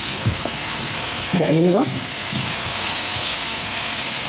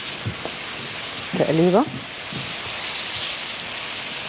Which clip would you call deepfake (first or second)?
first